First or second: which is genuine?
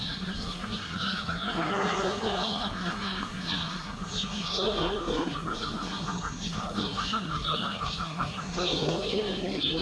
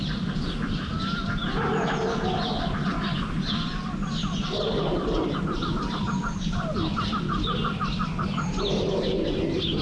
second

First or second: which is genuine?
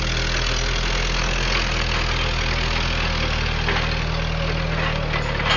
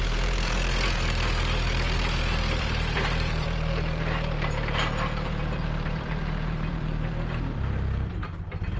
first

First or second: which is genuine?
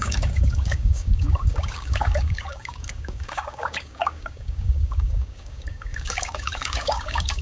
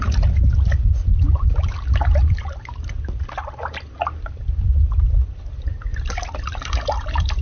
second